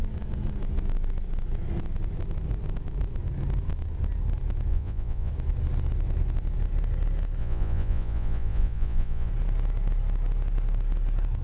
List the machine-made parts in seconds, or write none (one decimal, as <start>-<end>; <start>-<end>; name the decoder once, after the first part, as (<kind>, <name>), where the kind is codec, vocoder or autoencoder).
4.7-5.3 (vocoder, Vocos); 7.4-9.3

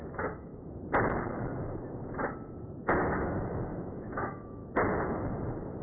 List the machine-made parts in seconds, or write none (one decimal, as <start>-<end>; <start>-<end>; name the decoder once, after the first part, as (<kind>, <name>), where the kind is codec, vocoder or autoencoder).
0.0-0.5 (autoencoder, DAC-VAE); 2.6-4.6

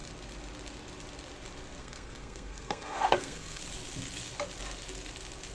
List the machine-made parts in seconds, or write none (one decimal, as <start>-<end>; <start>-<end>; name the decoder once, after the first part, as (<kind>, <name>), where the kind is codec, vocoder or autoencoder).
1.8-3.6 (codec, SNAC)

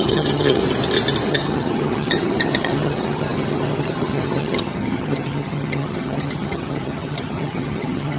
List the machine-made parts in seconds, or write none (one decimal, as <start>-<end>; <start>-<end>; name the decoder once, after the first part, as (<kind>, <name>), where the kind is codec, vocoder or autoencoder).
0.0-0.6 (vocoder, HiFi-GAN); 1.3-8.2

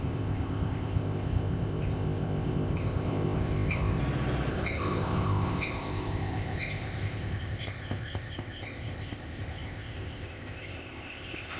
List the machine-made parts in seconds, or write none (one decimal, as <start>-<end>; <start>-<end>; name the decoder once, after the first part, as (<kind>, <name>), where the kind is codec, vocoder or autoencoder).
0.0-4.0 (codec, ZipCodec); 4.5-11.6